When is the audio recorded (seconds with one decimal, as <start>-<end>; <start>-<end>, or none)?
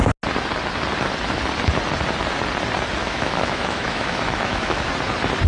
0.0-3.0; 4.9-5.5